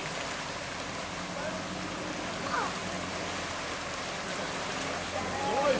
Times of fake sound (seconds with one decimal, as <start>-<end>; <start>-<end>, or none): none